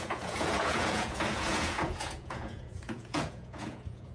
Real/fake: fake